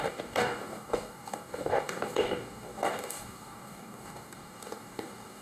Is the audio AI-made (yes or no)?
yes